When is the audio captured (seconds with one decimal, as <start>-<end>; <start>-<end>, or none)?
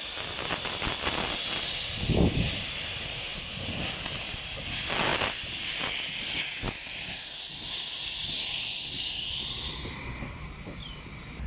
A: 0.0-11.5